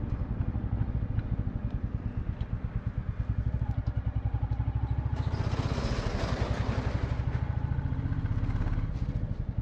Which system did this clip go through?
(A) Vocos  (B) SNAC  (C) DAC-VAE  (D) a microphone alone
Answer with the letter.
D